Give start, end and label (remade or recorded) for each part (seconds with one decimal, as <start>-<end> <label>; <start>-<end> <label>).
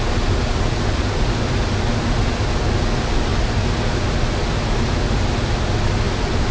0.0-6.5 recorded